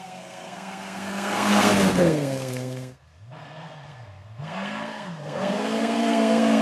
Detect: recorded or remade remade